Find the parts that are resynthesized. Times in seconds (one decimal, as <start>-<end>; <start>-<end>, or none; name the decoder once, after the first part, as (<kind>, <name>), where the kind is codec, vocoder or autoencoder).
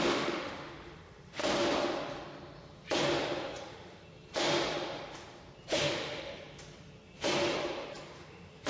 0.0-1.4 (autoencoder, DAC-VAE); 3.6-4.0; 5.7-6.3; 8.1-8.7